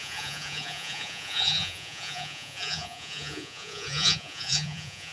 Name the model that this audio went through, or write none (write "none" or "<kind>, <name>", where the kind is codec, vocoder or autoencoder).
vocoder, Vocos